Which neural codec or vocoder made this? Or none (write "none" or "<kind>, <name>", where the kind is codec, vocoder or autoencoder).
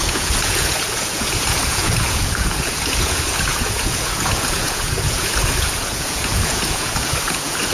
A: vocoder, Vocos